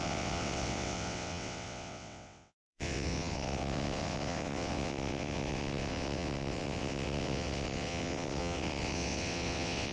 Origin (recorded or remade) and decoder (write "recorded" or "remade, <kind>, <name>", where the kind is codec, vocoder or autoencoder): remade, vocoder, WaveNeXt